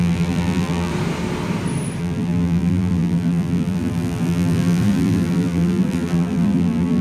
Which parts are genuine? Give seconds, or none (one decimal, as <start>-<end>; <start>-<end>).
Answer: 0.9-2.0